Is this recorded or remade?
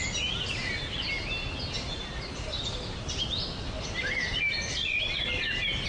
recorded